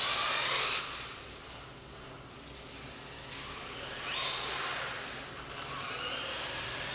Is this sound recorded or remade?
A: recorded